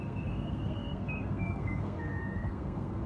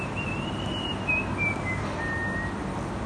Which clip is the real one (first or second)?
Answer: second